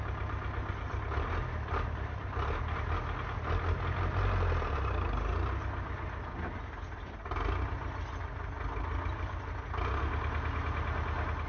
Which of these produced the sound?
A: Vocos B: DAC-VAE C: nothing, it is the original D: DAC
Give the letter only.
C